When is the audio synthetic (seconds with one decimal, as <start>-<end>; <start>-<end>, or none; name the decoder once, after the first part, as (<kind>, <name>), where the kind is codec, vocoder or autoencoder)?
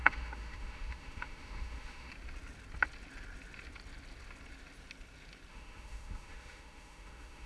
0.0-2.1 (autoencoder, DAC-VAE); 5.5-7.5